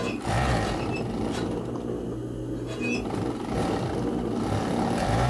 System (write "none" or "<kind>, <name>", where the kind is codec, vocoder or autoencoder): none